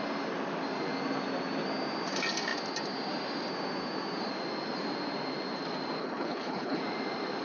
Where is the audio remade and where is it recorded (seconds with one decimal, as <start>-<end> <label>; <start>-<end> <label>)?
0.0-6.0 recorded; 6.0-6.8 remade; 6.8-7.4 recorded